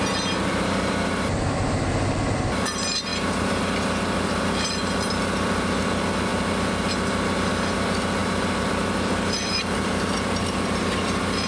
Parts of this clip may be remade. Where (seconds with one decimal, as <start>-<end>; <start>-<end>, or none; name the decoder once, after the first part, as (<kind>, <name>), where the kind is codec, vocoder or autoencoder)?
none